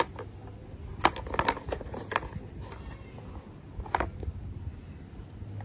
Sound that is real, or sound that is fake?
real